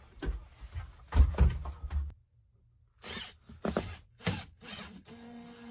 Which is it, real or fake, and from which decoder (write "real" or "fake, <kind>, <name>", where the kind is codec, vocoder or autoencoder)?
real